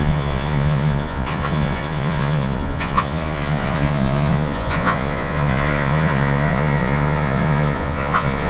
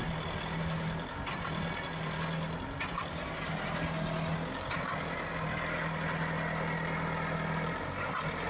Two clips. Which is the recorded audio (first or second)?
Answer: second